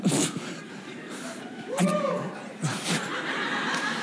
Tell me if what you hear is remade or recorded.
remade